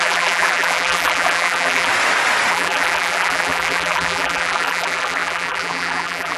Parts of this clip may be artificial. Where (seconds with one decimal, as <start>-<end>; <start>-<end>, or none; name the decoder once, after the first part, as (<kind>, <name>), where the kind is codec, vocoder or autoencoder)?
0.0-1.9 (vocoder, BigVGAN v2); 2.5-6.4